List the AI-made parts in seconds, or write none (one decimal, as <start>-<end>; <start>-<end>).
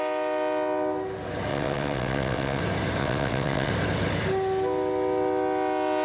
1.5-2.6; 3.0-3.7